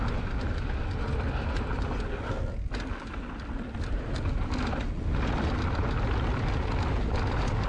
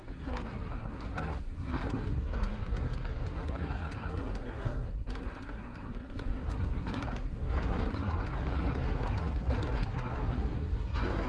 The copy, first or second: second